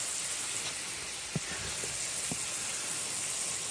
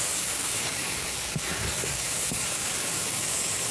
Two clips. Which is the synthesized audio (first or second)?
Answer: second